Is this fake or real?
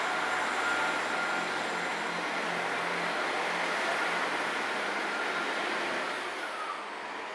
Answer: real